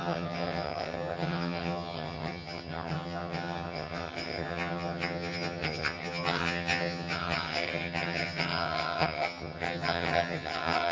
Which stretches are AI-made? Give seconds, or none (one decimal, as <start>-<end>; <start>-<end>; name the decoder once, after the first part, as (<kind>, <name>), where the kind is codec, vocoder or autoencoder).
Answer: 0.0-10.9 (vocoder, HiFi-GAN)

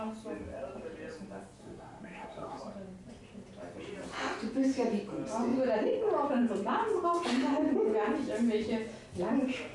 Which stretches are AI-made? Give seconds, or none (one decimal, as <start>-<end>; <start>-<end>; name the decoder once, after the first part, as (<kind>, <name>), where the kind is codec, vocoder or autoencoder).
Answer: 1.6-2.6 (codec, SNAC)

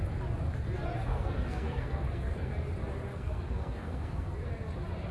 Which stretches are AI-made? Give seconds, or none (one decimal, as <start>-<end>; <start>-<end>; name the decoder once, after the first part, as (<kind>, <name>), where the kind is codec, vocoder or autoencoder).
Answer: 1.1-2.5 (codec, SNAC); 3.1-4.3

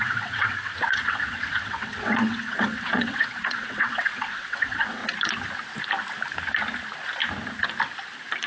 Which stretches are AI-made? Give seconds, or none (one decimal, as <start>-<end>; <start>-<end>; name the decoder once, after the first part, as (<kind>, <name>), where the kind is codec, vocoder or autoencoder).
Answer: 0.0-5.0 (vocoder, WaveNeXt)

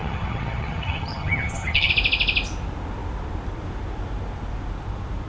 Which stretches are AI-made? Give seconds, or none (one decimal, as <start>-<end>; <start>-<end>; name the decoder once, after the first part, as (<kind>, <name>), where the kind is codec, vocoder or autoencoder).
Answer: 0.0-1.9 (vocoder, HiFi-GAN)

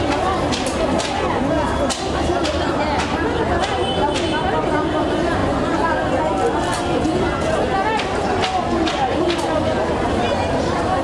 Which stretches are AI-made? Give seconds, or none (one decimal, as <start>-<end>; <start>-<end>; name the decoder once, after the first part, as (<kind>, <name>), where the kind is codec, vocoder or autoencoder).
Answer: 5.4-5.9 (vocoder, Vocos)